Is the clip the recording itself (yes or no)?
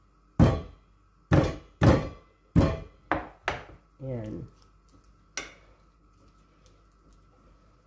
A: yes